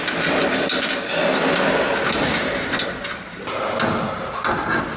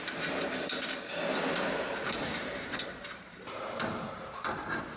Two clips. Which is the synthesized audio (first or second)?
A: second